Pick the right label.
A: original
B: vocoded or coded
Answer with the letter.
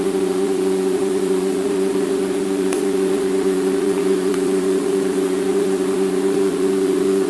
B